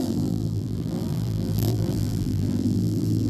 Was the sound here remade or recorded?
remade